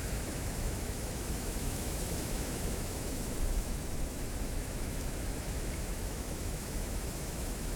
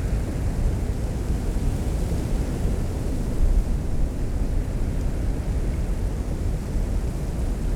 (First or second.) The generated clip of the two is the first